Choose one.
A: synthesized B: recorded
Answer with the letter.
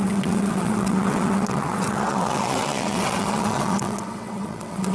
A